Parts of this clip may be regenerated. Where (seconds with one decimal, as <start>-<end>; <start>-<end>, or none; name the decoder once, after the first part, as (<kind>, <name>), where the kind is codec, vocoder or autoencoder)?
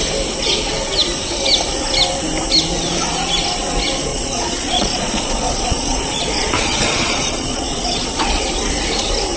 4.1-8.5 (vocoder, Vocos)